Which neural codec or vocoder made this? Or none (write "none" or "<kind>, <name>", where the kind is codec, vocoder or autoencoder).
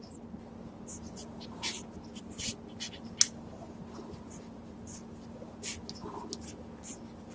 none